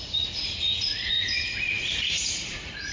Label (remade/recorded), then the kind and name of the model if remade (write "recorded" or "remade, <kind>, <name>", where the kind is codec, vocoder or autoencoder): remade, vocoder, Vocos